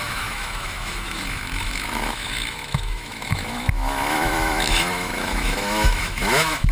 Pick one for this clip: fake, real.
fake